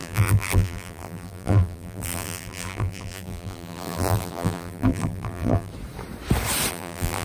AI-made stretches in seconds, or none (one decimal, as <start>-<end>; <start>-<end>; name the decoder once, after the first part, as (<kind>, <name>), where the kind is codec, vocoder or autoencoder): 0.0-5.7 (vocoder, BigVGAN v2); 6.7-7.2